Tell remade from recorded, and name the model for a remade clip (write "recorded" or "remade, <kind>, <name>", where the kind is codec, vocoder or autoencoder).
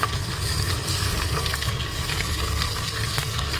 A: remade, codec, SNAC